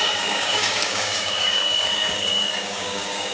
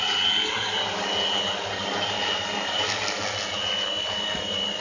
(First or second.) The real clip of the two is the second